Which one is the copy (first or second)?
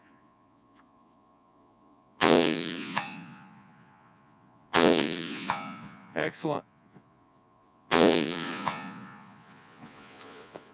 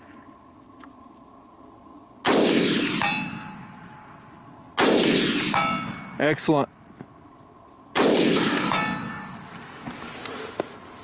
first